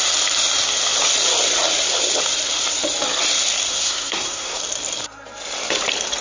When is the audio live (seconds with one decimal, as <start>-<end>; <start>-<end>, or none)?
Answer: 0.0-3.7; 4.6-6.2